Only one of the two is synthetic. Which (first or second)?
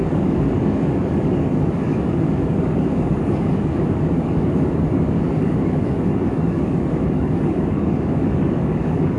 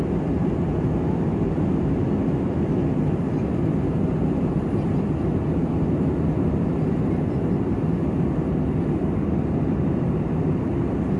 first